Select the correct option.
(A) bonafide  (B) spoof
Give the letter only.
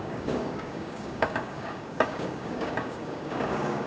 B